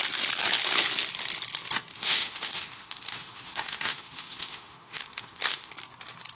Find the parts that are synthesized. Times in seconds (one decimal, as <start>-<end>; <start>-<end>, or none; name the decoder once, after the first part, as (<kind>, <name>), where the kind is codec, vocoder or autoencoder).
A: 1.9-5.7 (autoencoder, DAC-VAE)